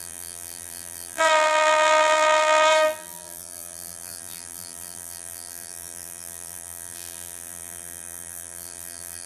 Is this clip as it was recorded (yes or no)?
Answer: no